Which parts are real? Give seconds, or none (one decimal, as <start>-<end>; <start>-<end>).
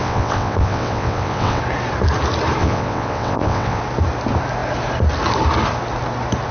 1.6-2.6; 3.8-6.5